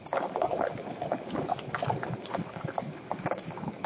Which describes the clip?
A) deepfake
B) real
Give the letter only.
A